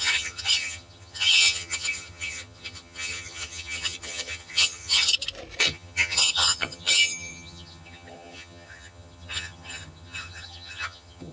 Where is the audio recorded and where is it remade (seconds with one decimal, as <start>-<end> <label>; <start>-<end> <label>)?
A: 0.0-5.1 remade; 5.1-5.6 recorded; 5.6-11.3 remade